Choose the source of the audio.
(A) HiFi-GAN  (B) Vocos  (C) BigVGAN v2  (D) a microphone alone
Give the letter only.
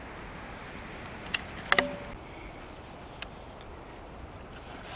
D